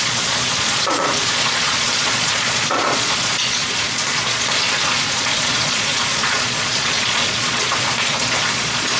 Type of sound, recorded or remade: remade